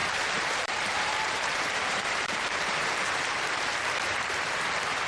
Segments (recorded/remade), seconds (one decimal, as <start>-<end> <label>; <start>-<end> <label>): 0.0-3.1 remade; 3.1-5.1 recorded